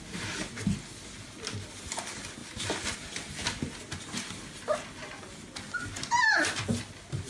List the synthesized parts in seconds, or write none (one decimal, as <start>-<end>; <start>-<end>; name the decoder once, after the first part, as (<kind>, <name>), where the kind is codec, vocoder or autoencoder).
none